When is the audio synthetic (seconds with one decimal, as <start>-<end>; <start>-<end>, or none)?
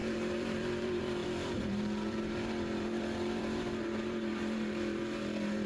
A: 0.0-5.7